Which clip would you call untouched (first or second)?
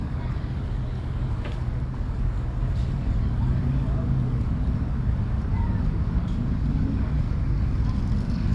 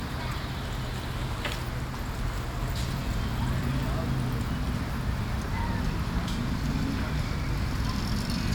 second